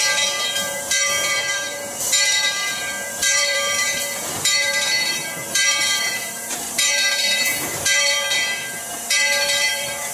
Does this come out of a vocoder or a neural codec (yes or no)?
yes